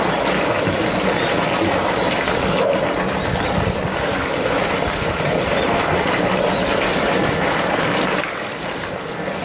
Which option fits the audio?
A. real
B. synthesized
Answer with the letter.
A